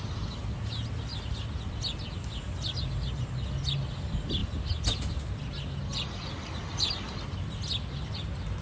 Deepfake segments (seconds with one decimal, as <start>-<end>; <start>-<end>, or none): none